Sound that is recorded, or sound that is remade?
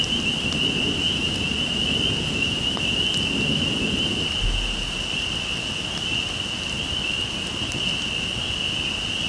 recorded